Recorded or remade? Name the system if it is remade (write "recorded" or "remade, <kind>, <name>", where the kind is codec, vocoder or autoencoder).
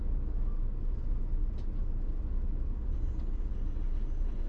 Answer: recorded